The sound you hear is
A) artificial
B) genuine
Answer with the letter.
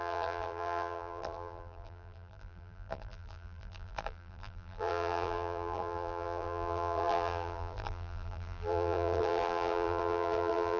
A